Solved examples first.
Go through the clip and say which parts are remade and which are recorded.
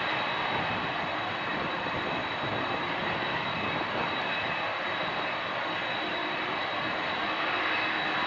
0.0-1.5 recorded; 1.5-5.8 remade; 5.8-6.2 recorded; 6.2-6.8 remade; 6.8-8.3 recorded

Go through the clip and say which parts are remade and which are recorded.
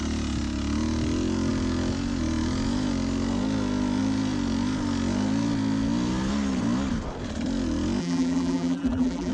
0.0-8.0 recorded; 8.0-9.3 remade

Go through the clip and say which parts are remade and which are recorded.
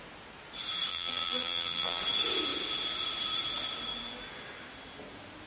0.0-0.9 recorded; 0.9-2.0 remade; 2.0-5.5 recorded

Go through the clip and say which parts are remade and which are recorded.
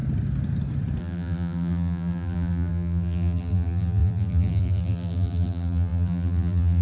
0.0-1.0 recorded; 1.0-6.8 remade